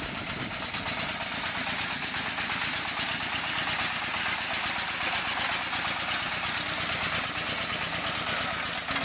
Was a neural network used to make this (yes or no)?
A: no